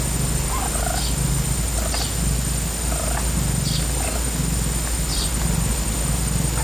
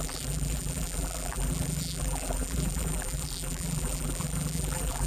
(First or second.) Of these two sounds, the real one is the first